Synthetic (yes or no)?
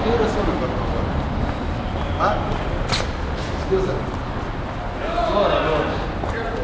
no